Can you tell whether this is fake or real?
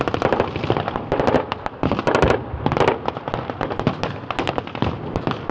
real